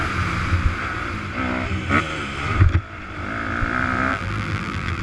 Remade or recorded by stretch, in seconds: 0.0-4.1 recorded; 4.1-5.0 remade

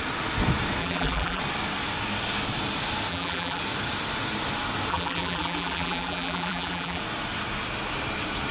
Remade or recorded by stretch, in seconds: 0.0-0.8 recorded; 0.8-1.4 remade; 1.4-3.1 recorded; 3.1-3.6 remade; 3.6-4.9 recorded; 4.9-7.0 remade; 7.0-8.5 recorded